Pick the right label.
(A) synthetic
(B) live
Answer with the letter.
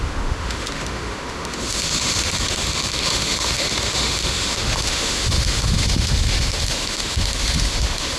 A